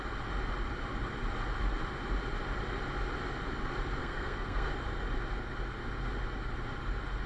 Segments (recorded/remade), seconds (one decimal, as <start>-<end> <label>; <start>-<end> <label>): 0.0-4.0 recorded; 4.0-4.7 remade; 4.7-7.3 recorded